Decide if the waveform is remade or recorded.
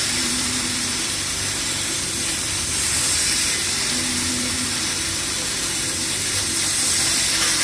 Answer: remade